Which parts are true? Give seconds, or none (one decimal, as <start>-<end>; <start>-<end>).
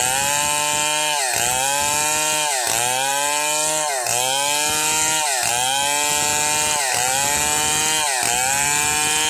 0.0-9.3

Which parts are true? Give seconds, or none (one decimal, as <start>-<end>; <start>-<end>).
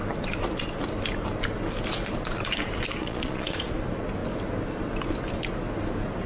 0.0-3.0; 3.7-6.3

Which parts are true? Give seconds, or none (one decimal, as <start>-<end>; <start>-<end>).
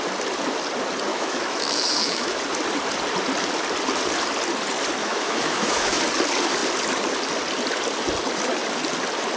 0.0-1.1; 2.4-5.0; 6.0-9.4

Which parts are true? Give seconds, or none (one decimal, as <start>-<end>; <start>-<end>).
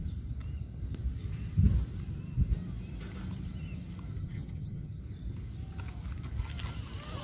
0.0-4.2; 5.0-7.2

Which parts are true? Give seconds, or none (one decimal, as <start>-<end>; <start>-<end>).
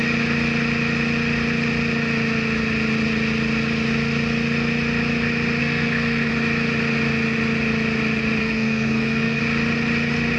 0.0-5.6; 6.3-8.4; 9.4-10.4